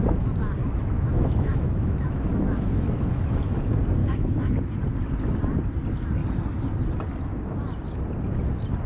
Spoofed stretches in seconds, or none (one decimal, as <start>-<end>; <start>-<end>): 0.6-3.6; 4.0-4.6